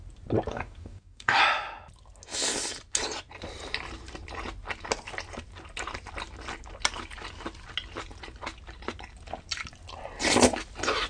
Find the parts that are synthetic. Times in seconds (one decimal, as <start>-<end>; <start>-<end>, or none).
0.5-1.4